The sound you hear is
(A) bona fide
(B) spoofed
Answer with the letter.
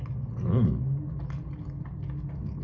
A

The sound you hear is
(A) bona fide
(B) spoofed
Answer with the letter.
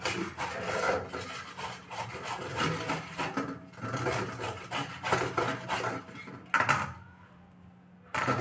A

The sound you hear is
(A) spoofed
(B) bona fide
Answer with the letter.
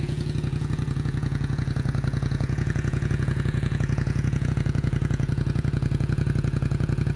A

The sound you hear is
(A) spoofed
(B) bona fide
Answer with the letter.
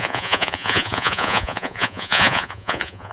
A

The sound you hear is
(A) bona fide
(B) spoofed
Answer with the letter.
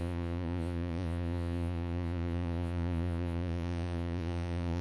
B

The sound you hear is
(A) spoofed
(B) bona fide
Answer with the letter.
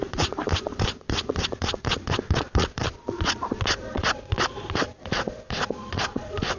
A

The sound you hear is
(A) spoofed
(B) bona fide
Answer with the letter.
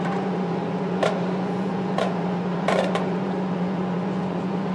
A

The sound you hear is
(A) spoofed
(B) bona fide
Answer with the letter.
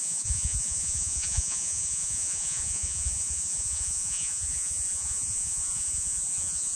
A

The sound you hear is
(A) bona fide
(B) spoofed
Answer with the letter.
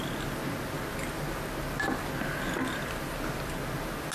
A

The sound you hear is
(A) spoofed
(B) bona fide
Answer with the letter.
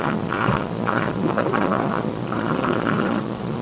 A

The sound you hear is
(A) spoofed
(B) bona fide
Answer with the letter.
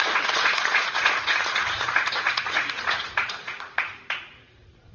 A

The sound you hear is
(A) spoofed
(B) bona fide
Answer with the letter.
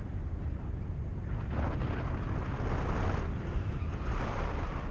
B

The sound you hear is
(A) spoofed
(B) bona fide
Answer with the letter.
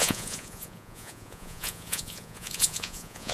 A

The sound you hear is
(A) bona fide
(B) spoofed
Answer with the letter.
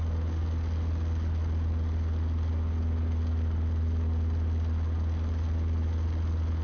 A